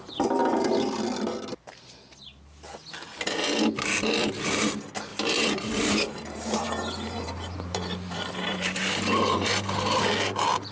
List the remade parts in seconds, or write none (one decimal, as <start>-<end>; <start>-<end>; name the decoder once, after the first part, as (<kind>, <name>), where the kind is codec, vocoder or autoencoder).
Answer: 5.1-10.0 (vocoder, BigVGAN v2)